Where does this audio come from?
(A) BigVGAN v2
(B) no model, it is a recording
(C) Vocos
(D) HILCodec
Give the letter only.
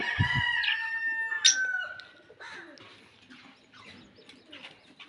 B